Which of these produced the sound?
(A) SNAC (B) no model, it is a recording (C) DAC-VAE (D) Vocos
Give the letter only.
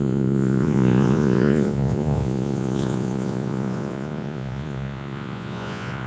D